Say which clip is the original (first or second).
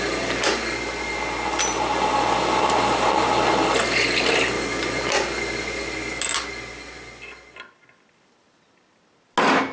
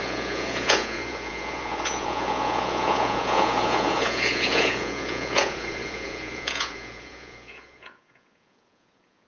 first